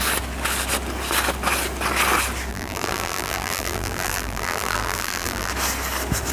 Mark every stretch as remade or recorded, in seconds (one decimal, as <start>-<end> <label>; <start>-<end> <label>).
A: 0.0-2.5 recorded; 2.5-5.5 remade; 5.5-6.3 recorded